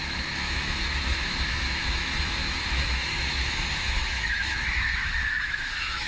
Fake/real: fake